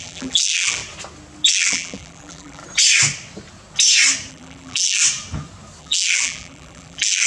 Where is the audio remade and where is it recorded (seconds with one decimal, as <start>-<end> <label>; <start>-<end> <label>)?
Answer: 0.0-0.8 remade; 0.8-1.5 recorded; 1.5-2.6 remade; 2.6-4.3 recorded; 4.3-5.0 remade; 5.0-5.8 recorded; 5.8-7.3 remade